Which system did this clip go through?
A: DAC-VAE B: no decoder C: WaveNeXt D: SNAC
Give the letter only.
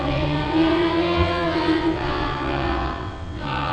C